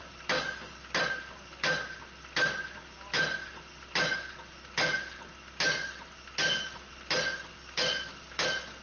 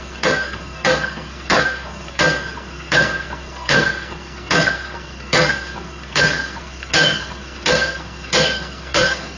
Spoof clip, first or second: second